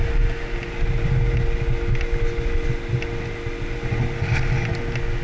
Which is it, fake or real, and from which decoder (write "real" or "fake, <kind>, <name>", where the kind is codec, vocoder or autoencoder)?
real